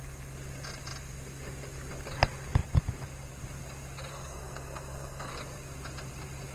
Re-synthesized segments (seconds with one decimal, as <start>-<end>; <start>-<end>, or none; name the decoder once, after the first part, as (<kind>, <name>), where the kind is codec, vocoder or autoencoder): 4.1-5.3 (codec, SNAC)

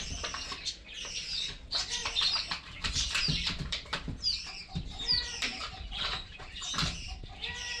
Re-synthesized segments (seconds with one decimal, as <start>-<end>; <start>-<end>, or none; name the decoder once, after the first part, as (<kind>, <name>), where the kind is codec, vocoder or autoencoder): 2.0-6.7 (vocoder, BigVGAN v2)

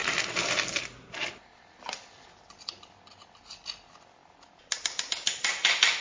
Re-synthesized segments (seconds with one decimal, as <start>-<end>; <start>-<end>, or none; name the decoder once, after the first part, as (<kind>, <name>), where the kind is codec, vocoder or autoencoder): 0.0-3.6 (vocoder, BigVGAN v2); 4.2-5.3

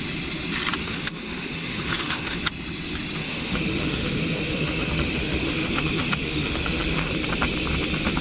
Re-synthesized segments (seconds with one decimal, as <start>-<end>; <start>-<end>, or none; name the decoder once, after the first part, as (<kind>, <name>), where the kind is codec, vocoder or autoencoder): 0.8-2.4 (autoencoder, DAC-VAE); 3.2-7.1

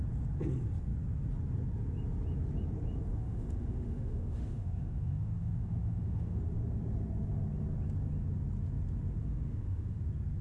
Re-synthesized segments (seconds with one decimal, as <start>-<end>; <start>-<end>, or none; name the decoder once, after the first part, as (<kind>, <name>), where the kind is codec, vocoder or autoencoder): 3.2-6.4 (autoencoder, DAC-VAE); 9.2-10.0

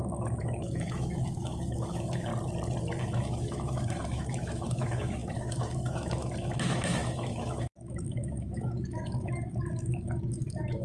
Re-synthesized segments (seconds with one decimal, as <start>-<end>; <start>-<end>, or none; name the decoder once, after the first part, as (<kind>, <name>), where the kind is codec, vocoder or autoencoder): 0.0-2.3 (autoencoder, DAC-VAE); 3.0-10.8

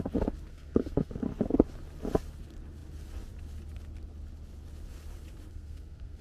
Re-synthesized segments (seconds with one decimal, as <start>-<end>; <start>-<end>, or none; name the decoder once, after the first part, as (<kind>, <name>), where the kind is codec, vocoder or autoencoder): 0.5-1.1 (codec, SNAC); 5.5-6.2

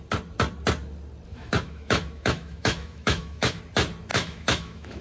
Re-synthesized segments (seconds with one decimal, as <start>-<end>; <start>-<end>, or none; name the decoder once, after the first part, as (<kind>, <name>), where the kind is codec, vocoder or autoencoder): 1.3-3.6 (autoencoder, DAC-VAE); 4.1-5.0